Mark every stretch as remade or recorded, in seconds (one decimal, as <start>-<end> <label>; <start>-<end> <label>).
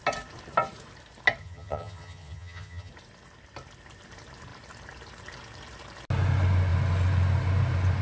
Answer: 0.0-1.4 recorded; 1.4-2.9 remade; 2.9-8.0 recorded